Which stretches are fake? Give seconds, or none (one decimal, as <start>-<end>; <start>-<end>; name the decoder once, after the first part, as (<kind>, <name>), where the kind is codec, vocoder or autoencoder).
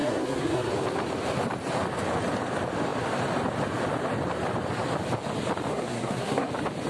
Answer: 0.0-0.7 (codec, SNAC); 5.7-6.5